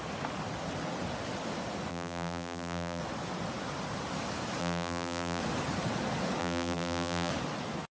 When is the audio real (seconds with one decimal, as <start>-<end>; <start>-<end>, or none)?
0.0-1.9; 3.0-4.6; 5.4-6.4; 7.3-7.9